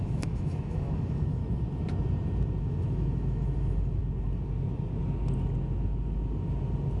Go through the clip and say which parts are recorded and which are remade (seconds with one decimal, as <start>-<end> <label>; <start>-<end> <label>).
0.0-1.4 remade; 1.4-2.6 recorded; 2.6-4.0 remade; 4.0-7.0 recorded